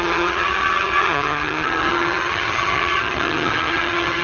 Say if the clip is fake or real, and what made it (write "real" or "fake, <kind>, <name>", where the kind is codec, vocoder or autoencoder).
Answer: fake, vocoder, HiFi-GAN